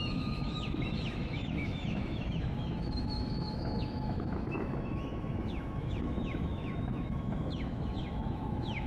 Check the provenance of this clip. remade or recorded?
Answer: remade